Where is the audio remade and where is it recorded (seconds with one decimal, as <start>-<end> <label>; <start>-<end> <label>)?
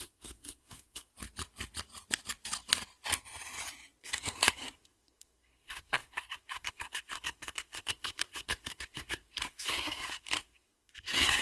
0.0-1.1 remade; 1.1-4.0 recorded; 4.0-11.4 remade